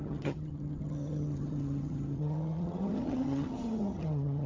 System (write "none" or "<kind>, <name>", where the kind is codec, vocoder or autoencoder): vocoder, HiFi-GAN